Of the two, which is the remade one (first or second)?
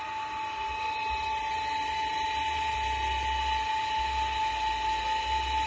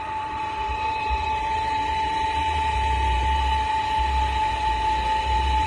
second